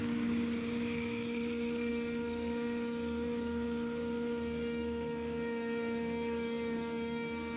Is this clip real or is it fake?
fake